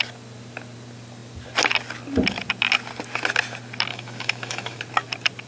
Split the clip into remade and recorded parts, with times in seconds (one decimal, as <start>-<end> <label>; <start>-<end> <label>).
0.0-3.9 recorded; 3.9-4.8 remade; 4.8-5.5 recorded